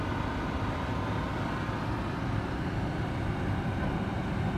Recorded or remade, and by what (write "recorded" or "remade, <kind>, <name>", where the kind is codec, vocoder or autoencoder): recorded